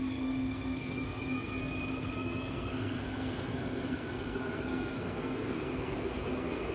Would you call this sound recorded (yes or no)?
no